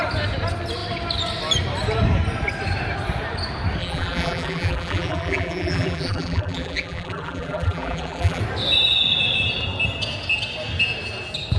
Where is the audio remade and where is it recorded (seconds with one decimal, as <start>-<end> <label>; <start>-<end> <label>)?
0.0-3.8 recorded; 3.8-8.4 remade; 8.4-11.6 recorded